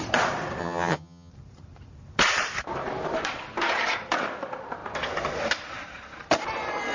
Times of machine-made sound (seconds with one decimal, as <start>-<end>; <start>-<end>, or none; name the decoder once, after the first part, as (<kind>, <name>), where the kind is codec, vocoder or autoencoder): 0.6-1.3 (vocoder, HiFi-GAN)